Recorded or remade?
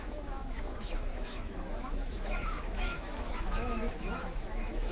remade